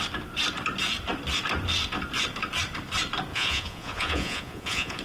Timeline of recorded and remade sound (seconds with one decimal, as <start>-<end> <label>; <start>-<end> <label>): 0.0-3.3 recorded; 3.3-5.0 remade